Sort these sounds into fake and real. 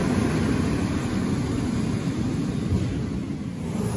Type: real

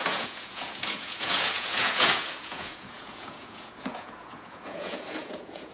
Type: fake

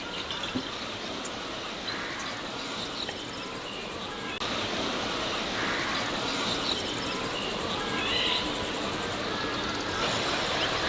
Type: real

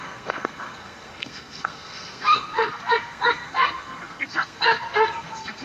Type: fake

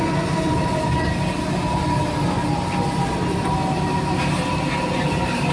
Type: real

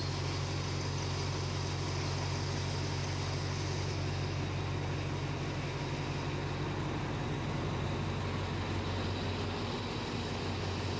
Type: real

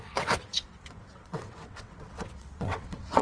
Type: fake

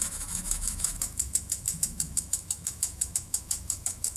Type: fake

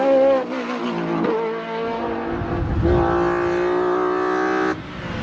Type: real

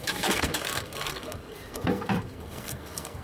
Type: fake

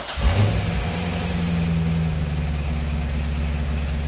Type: real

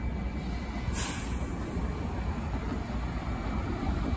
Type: real